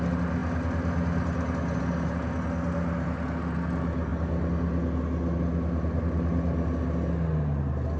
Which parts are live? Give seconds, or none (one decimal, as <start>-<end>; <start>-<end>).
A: 0.0-8.0